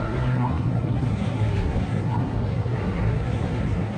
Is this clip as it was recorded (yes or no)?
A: no